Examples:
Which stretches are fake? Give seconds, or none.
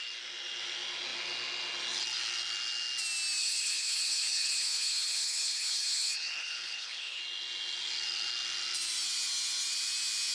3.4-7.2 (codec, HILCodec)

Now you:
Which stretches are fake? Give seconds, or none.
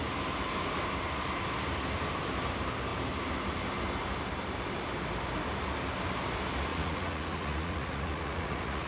6.7-8.9 (vocoder, Vocos)